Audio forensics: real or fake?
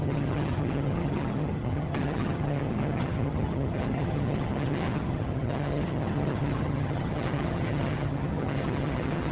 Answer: fake